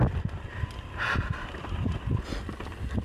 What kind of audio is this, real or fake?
real